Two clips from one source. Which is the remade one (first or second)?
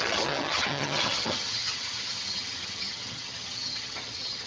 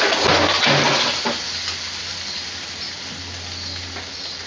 first